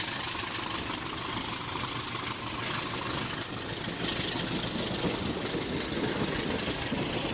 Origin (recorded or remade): recorded